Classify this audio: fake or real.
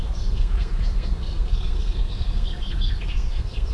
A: fake